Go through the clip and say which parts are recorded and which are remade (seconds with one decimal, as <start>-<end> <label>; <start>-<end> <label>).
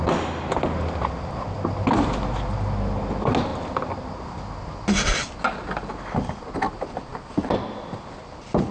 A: 0.0-8.7 recorded